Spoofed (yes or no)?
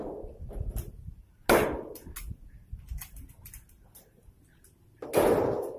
no